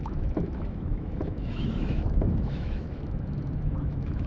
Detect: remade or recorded remade